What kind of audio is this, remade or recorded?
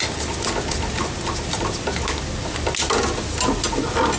recorded